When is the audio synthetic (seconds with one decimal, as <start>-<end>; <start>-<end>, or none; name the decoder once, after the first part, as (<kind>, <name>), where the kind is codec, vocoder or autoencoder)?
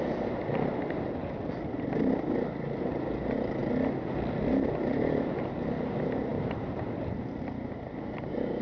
6.3-7.4 (vocoder, BigVGAN v2)